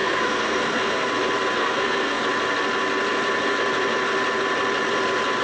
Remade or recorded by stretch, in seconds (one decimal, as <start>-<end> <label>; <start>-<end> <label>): 0.0-1.1 remade; 1.1-1.6 recorded; 1.6-2.2 remade; 2.2-5.4 recorded